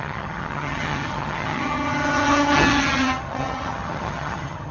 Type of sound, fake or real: fake